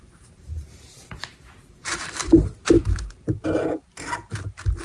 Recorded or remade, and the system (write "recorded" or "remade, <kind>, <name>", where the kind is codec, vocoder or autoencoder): remade, vocoder, BigVGAN v2